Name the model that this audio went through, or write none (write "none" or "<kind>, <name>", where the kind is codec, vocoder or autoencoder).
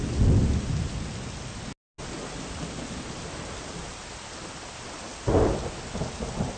none